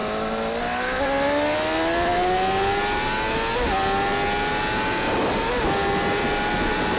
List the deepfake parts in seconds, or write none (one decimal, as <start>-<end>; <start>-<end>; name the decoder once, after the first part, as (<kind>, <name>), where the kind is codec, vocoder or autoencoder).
none